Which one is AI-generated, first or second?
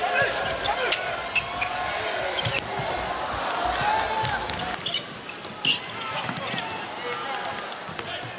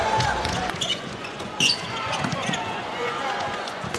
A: second